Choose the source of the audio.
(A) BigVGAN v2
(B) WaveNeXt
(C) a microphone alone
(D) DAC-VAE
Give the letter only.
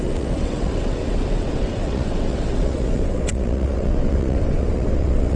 B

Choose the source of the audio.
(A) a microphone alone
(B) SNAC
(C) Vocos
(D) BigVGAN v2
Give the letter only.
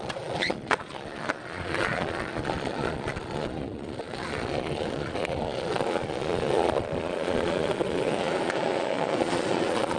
C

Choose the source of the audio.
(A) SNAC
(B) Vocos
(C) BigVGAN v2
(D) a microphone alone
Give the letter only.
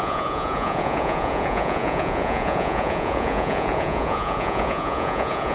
B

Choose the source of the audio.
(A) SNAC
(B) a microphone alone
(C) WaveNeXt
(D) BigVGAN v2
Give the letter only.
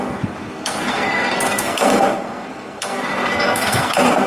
A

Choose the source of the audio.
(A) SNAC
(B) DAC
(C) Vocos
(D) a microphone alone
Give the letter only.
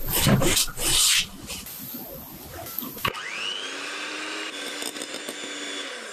D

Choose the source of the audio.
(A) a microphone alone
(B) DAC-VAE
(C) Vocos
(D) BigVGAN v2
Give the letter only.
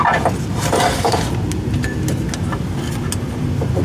A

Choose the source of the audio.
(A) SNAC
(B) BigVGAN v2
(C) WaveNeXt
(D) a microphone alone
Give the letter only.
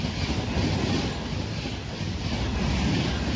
D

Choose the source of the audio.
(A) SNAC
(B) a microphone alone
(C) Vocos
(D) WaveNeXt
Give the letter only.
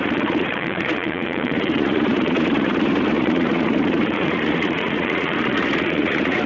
C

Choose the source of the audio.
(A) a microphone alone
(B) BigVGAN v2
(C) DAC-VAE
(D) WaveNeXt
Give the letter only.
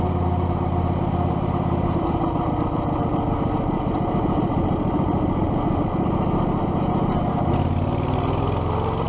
A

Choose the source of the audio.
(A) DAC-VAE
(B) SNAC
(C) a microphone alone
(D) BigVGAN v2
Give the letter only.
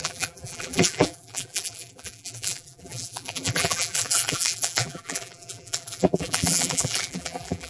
D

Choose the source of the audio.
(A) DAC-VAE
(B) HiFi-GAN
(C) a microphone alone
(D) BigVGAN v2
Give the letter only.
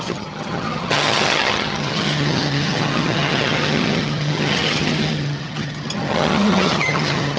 B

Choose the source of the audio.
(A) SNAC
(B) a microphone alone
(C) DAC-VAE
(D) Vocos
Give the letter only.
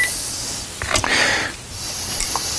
B